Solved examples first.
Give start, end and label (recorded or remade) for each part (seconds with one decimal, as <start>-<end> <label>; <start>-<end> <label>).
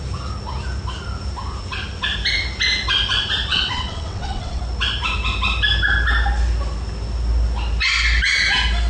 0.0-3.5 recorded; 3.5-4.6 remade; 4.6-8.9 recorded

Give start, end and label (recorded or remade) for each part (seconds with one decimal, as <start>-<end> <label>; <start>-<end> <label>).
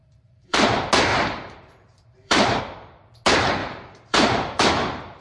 0.0-0.7 remade; 0.7-1.1 recorded; 1.1-2.6 remade; 2.6-3.6 recorded; 3.6-5.2 remade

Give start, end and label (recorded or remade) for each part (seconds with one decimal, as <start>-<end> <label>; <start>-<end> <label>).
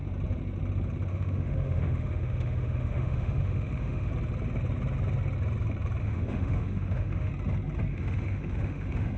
0.0-1.1 recorded; 1.1-4.1 remade; 4.1-6.0 recorded; 6.0-7.3 remade; 7.3-7.9 recorded; 7.9-9.2 remade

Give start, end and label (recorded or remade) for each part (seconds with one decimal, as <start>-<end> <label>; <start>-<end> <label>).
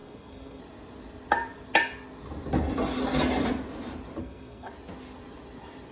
0.0-0.6 remade; 0.6-4.2 recorded; 4.2-4.7 remade; 4.7-5.9 recorded